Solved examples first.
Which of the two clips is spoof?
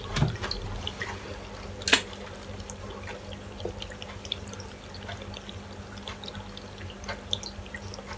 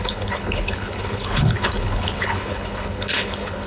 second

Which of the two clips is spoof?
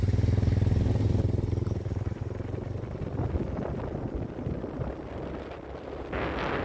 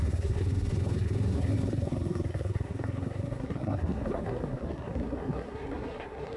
second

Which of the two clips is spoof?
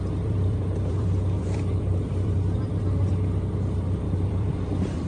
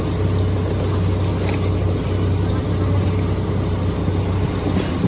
first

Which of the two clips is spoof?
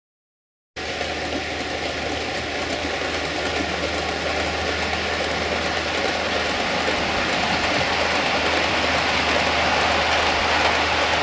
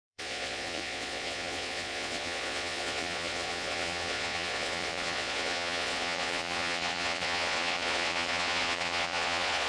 second